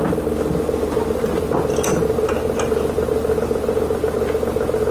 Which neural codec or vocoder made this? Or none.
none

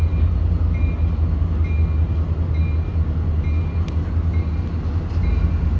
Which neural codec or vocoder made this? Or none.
none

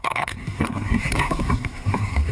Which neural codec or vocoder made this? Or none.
codec, SNAC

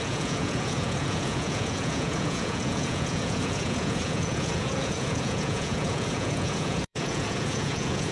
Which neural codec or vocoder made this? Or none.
vocoder, Vocos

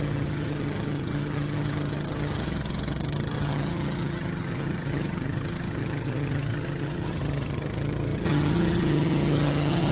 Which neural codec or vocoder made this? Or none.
vocoder, HiFi-GAN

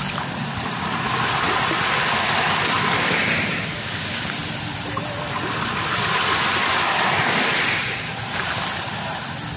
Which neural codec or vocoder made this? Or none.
none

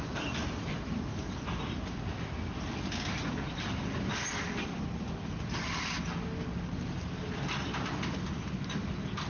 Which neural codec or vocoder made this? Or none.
none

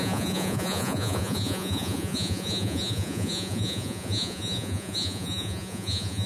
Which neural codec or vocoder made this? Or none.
vocoder, Vocos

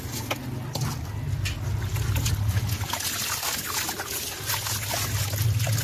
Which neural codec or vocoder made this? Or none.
none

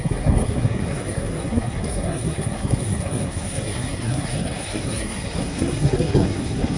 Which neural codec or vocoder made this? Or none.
codec, SNAC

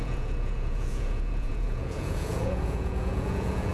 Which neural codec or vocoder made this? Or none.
vocoder, Vocos